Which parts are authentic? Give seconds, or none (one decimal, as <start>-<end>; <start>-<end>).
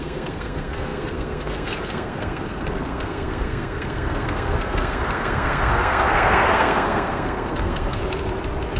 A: 8.0-8.8